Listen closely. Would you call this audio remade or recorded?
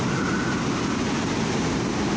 recorded